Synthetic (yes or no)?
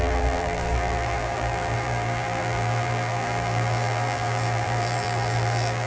yes